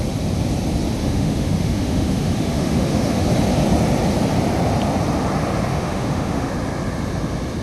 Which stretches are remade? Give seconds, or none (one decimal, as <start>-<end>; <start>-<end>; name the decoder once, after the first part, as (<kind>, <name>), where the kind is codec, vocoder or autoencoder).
1.0-3.3 (autoencoder, DAC-VAE); 5.7-6.5